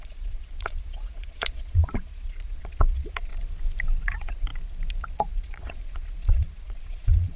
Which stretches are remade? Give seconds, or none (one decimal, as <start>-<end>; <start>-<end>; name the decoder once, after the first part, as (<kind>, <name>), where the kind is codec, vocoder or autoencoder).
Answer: 0.0-3.3 (vocoder, Vocos); 4.0-4.5; 5.1-7.4

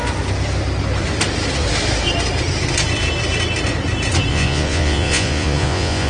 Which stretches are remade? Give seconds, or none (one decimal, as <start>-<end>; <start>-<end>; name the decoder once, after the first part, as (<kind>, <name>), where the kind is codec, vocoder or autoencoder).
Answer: 4.3-6.1 (vocoder, Vocos)

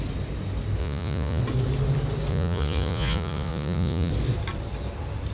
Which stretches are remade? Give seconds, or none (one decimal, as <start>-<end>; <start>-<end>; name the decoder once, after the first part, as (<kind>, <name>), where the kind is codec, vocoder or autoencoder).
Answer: 0.8-1.4 (vocoder, Vocos); 2.3-4.1

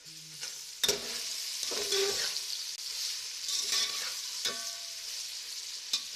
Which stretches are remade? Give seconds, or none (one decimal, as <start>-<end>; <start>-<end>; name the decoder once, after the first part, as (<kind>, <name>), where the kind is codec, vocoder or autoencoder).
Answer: 1.3-2.2 (vocoder, BigVGAN v2); 2.9-5.2

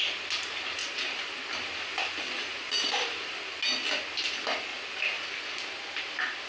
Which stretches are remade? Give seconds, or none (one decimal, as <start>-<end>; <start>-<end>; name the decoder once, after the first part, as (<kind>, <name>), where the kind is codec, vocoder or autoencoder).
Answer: 0.8-1.4 (vocoder, BigVGAN v2); 1.9-3.4; 4.7-5.2

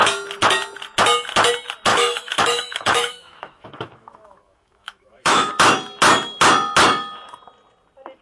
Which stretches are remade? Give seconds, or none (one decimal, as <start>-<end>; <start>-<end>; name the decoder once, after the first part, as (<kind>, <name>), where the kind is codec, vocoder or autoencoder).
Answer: 1.9-5.5 (autoencoder, DAC-VAE)

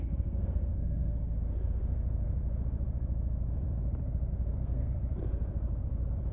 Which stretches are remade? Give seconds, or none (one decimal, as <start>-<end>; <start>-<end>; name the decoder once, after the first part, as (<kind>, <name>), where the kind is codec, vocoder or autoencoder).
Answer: 0.0-2.4 (codec, SNAC); 4.3-5.0

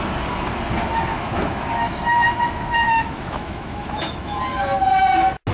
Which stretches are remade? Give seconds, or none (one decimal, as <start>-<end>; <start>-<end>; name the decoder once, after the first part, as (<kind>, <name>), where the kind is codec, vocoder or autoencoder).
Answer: 1.1-4.4 (autoencoder, DAC-VAE)